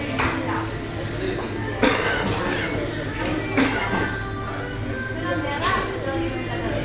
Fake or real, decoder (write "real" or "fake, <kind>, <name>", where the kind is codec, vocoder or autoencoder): real